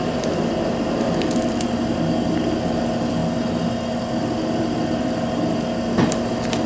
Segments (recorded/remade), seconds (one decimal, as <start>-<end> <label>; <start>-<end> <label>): 0.0-6.7 recorded